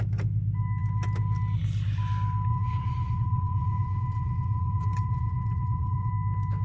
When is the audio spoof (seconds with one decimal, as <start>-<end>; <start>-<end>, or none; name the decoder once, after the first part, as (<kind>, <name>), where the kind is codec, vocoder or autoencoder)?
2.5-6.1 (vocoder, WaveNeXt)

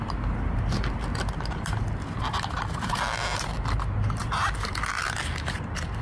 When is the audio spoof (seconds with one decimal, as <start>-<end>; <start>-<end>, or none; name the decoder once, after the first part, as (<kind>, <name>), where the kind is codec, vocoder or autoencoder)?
none

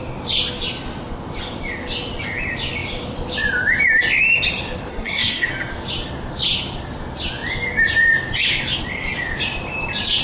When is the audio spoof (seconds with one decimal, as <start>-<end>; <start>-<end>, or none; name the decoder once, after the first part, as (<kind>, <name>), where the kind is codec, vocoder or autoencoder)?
4.9-5.5 (codec, SNAC)

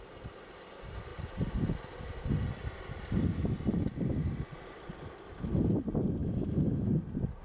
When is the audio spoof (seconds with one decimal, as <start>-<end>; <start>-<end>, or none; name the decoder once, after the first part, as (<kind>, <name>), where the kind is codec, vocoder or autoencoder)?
6.2-6.9 (autoencoder, DAC-VAE)

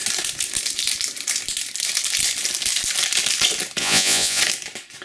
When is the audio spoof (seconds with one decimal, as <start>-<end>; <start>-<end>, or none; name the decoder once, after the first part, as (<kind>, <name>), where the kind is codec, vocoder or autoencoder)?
3.8-4.4 (vocoder, Vocos)

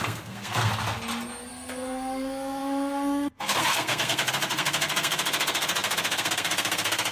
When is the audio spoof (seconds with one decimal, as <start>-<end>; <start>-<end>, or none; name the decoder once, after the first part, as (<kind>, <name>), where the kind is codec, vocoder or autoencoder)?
0.0-0.7 (codec, SNAC); 1.5-7.1